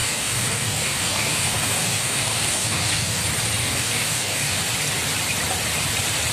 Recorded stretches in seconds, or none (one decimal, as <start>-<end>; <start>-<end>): 3.2-3.6; 4.6-6.3